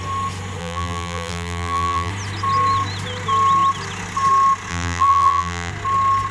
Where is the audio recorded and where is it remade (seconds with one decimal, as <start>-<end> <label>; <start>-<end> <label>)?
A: 0.0-0.6 recorded; 0.6-2.1 remade; 2.1-4.7 recorded; 4.7-5.7 remade; 5.7-6.3 recorded